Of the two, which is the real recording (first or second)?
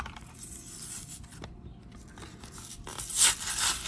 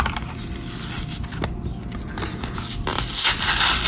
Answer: second